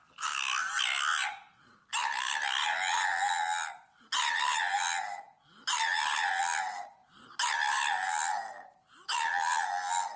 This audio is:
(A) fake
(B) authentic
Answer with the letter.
B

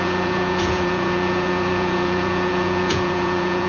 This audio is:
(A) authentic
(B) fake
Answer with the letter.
B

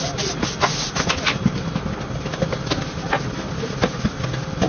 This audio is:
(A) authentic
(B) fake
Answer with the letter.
A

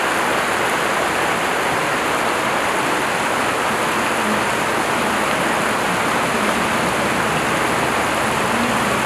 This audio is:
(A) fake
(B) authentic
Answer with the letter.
B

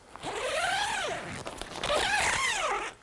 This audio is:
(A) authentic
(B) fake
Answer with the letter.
A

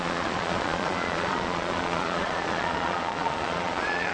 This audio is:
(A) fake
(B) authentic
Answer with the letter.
A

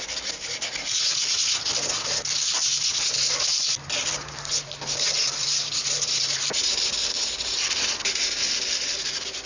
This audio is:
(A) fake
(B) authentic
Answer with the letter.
B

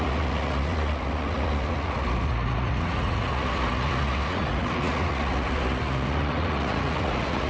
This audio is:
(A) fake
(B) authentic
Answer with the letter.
A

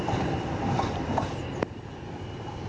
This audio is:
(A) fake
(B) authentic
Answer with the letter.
B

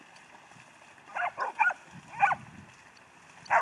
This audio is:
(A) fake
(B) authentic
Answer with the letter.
B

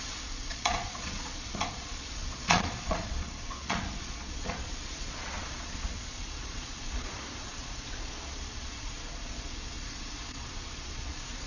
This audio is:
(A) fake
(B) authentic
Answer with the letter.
A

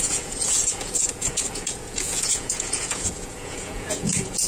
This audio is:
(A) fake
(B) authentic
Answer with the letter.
A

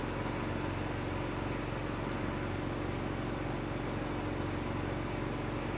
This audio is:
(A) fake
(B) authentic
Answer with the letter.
B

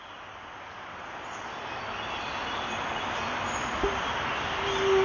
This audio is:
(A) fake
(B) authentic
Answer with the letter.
B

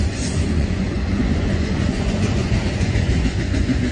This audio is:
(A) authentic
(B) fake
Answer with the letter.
B